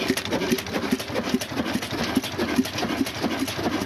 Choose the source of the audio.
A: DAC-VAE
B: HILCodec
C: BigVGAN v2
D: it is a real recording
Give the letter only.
D